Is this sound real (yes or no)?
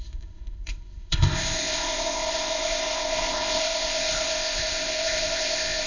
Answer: no